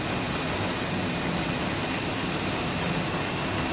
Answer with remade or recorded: recorded